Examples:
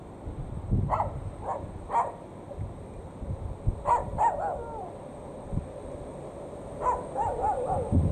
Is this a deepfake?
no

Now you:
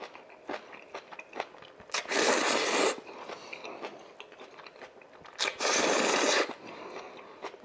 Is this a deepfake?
no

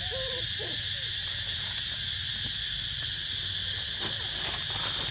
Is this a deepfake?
no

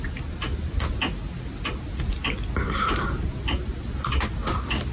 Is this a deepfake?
no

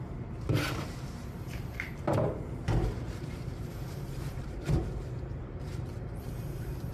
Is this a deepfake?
yes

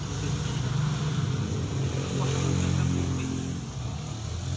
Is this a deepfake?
no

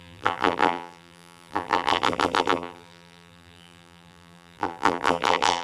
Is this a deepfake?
yes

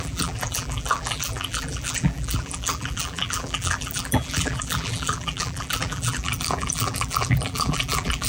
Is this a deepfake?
yes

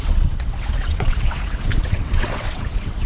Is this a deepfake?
yes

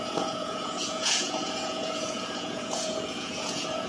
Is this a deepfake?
yes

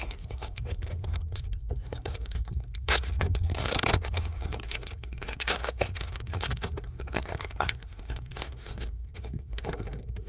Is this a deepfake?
yes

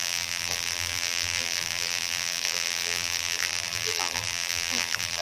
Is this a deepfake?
yes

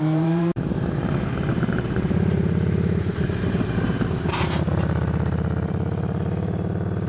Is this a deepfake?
yes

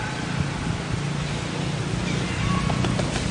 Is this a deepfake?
no